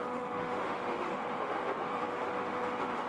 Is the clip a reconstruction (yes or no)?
yes